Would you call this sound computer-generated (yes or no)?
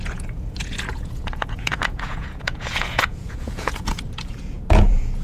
yes